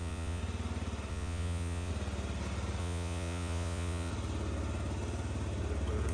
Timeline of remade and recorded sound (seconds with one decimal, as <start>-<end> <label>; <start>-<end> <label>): 0.0-0.4 remade; 0.4-1.1 recorded; 1.1-1.9 remade; 1.9-2.8 recorded; 2.8-4.1 remade; 4.1-6.1 recorded